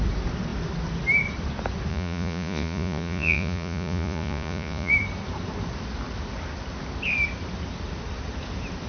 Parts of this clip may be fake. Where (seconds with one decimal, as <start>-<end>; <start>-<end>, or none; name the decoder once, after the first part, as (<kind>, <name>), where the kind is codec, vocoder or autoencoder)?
1.9-4.9 (vocoder, Vocos)